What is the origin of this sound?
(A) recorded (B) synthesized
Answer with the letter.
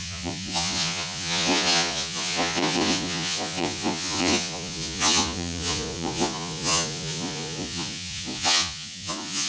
B